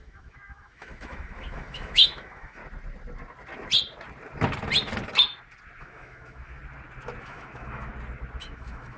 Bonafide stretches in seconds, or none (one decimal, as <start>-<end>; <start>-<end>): 2.6-5.8; 6.6-7.2; 7.9-8.4